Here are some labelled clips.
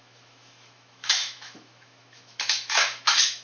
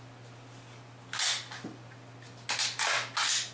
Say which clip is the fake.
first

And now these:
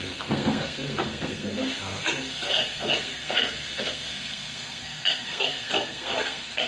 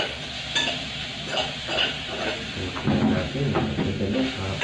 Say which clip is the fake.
first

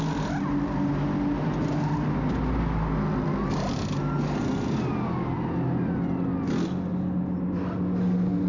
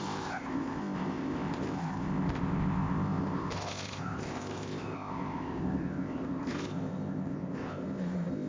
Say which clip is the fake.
second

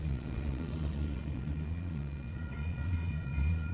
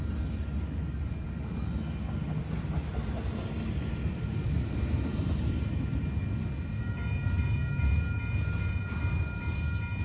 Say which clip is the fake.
first